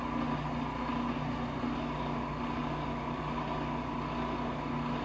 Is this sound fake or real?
real